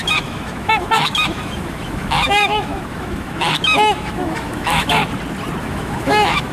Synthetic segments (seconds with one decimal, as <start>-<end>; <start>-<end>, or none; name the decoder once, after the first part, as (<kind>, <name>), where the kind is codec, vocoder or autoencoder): 0.0-5.0 (autoencoder, DAC-VAE); 5.6-6.5